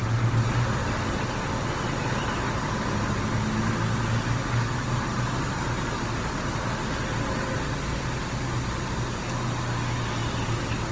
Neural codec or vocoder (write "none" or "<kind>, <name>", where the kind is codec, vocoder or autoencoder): none